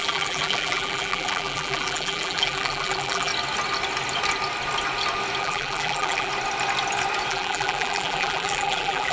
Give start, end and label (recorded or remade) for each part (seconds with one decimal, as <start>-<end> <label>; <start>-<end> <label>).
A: 0.0-3.3 remade; 3.3-5.4 recorded; 5.4-6.3 remade; 6.3-7.3 recorded; 7.3-9.1 remade